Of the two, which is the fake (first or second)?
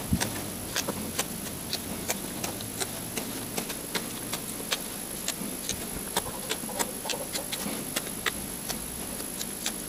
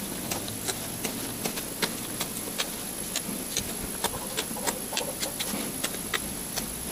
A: second